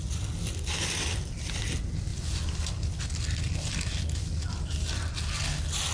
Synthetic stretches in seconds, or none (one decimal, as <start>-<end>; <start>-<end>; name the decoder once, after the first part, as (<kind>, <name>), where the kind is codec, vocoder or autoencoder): none